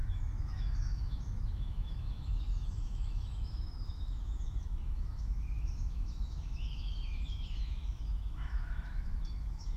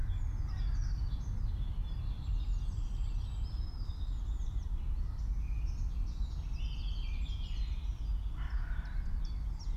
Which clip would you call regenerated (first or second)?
first